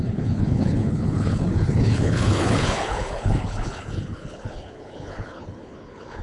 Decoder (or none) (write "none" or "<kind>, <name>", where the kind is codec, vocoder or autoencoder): codec, HILCodec